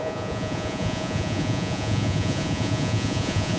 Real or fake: fake